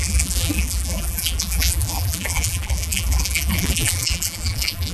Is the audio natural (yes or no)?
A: no